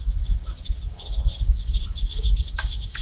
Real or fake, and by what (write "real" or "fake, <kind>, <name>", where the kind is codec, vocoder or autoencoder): fake, autoencoder, DAC-VAE